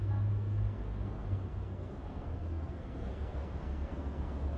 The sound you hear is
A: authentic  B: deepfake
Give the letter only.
B